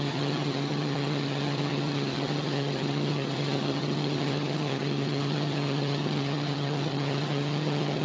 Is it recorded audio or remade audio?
remade